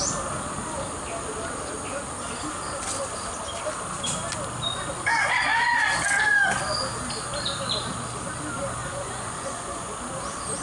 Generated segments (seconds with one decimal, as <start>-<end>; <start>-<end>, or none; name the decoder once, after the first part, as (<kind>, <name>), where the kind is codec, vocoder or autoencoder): 8.8-9.9 (vocoder, Vocos)